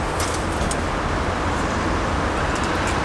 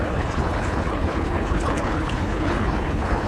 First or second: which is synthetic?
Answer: second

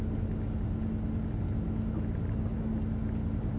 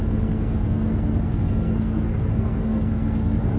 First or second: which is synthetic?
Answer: second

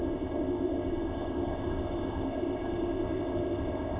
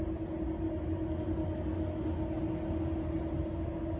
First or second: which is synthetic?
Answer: first